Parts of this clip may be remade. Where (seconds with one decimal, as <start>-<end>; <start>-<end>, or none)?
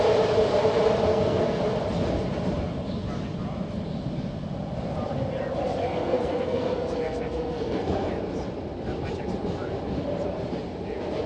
1.1-1.6; 5.8-8.1